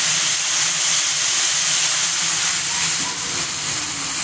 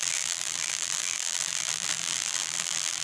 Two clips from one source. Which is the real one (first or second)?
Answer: first